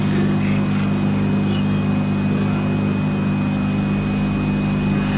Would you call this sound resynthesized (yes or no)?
no